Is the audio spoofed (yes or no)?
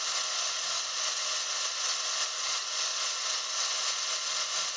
yes